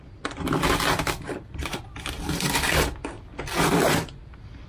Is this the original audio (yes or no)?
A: yes